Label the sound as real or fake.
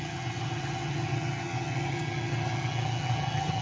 fake